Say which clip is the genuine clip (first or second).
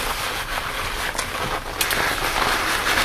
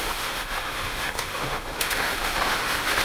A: first